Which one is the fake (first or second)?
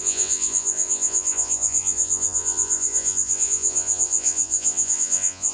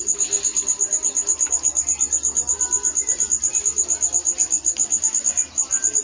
first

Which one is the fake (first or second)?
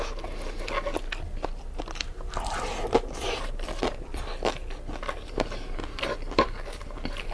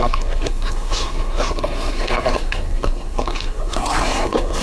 second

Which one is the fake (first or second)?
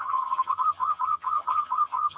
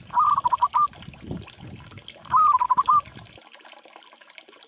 first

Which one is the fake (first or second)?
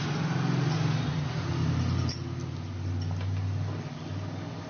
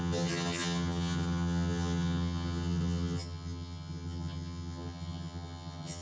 second